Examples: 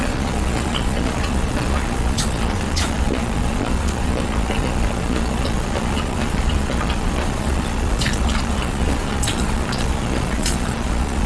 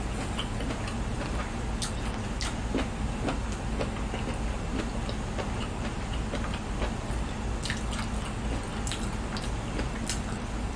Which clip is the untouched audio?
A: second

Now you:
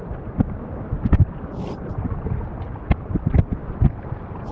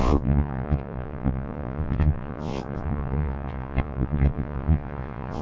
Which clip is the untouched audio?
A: first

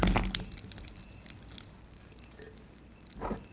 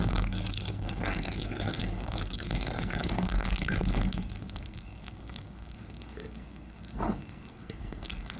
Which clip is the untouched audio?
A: first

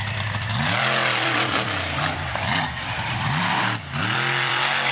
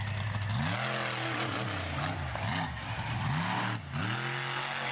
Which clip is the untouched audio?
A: second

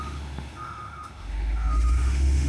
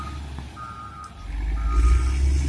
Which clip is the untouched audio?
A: second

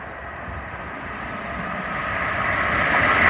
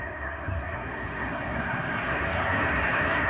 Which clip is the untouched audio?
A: first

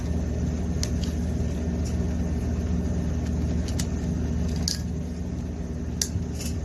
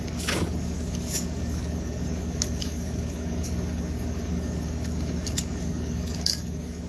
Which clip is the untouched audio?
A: first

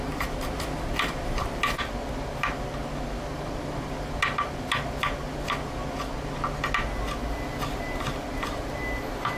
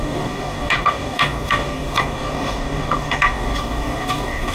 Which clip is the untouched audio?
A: first